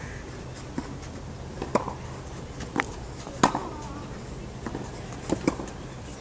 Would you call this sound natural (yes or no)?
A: yes